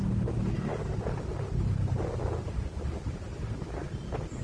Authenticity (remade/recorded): recorded